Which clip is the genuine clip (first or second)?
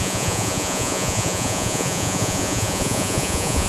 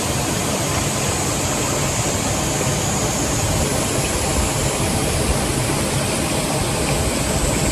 second